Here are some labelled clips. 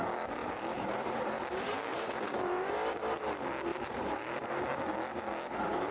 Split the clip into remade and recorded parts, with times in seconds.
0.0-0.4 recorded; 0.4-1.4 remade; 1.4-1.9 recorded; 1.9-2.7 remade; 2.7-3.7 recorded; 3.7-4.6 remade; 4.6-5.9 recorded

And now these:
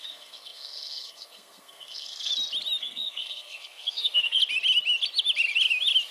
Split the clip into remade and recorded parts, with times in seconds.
0.0-2.3 remade; 2.3-2.8 recorded; 2.8-4.4 remade; 4.4-6.1 recorded

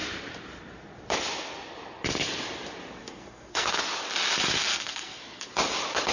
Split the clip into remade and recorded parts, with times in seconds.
0.0-3.0 recorded; 3.0-3.8 remade; 3.8-4.7 recorded; 4.7-5.5 remade; 5.5-6.1 recorded

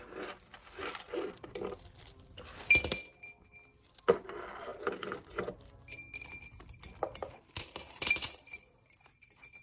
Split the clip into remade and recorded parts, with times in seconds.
0.0-9.6 recorded